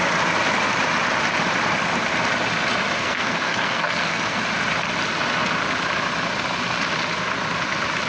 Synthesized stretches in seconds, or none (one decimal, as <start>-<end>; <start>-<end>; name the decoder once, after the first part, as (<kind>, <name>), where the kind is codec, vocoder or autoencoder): 3.0-4.4 (codec, SNAC)